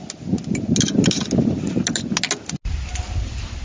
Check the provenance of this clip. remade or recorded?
recorded